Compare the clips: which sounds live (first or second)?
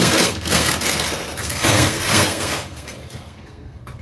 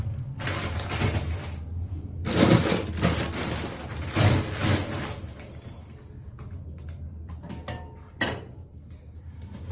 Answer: second